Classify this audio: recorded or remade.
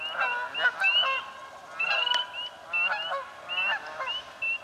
recorded